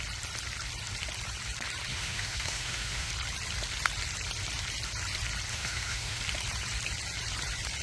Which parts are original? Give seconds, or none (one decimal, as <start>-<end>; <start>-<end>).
0.0-1.9; 3.1-5.5; 6.2-7.8